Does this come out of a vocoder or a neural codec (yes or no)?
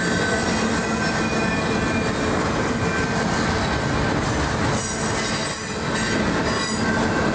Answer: no